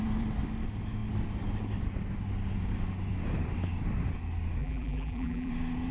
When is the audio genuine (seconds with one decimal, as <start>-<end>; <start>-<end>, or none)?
0.0-4.6; 5.5-5.9